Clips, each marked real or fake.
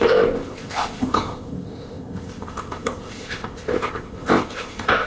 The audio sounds fake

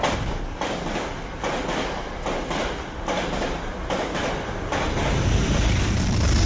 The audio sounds real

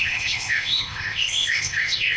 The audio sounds fake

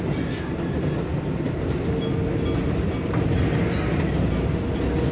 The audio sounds real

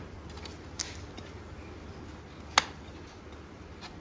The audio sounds real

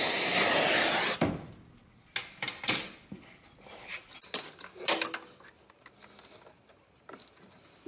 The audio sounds real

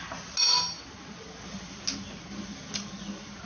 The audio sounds real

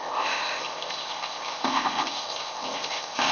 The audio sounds fake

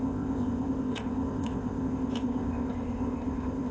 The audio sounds fake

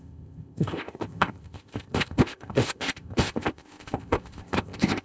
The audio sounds fake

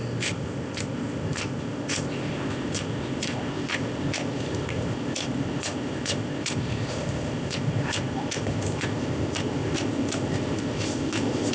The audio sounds fake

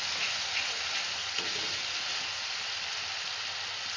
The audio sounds real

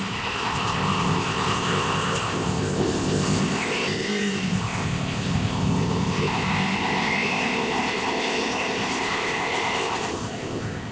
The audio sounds fake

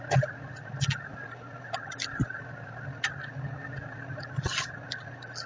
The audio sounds real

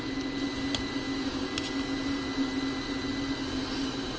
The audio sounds real